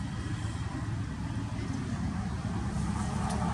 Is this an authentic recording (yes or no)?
yes